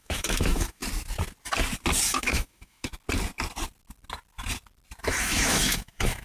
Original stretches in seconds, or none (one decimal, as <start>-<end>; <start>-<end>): 0.8-2.1; 2.9-5.0